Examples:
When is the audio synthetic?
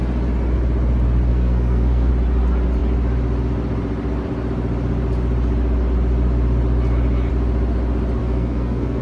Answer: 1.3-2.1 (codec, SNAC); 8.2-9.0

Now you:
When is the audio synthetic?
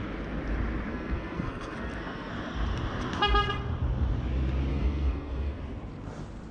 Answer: 0.9-2.3 (codec, SNAC); 4.7-5.6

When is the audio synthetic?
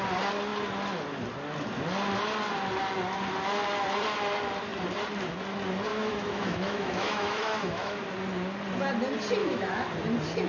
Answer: 5.9-8.0 (autoencoder, DAC-VAE); 9.4-9.9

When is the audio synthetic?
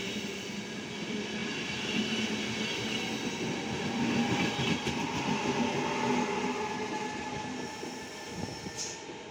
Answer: none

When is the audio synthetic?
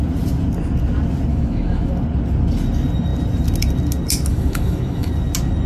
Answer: 1.3-1.9 (autoencoder, DAC-VAE); 4.3-5.1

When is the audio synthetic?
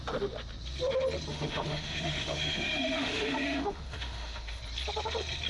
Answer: 1.3-4.6 (autoencoder, DAC-VAE)